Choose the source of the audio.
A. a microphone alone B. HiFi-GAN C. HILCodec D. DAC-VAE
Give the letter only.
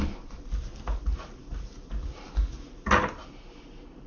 A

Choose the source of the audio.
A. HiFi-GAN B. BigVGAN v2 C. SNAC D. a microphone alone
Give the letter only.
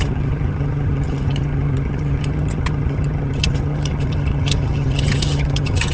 A